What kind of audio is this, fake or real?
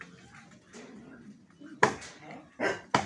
real